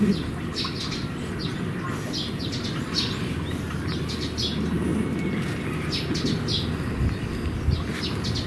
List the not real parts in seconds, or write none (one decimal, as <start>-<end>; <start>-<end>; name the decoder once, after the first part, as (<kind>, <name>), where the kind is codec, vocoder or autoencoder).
none